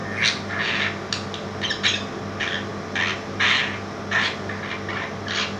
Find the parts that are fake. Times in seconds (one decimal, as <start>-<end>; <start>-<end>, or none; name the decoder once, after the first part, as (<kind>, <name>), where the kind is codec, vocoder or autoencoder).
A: none